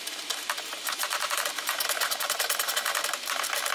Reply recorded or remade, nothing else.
remade